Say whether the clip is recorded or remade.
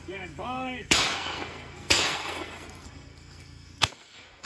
remade